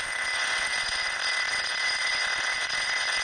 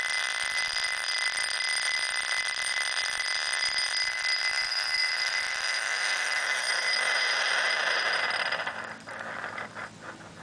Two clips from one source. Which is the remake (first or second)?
first